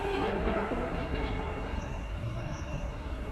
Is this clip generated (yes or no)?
yes